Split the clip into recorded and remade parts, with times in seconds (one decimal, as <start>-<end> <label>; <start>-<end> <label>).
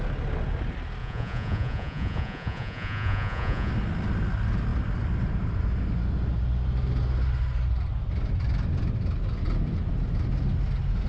0.0-1.0 recorded; 1.0-3.7 remade; 3.7-11.1 recorded